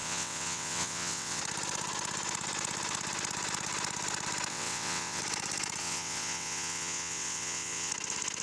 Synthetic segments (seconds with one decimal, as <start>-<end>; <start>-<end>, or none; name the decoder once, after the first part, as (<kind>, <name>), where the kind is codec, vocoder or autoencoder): 0.0-1.4 (vocoder, WaveNeXt); 4.5-5.2; 5.8-7.9